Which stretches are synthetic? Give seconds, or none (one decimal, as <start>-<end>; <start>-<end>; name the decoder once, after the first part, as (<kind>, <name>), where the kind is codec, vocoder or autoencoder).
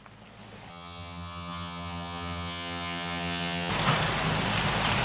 0.7-3.7 (vocoder, HiFi-GAN)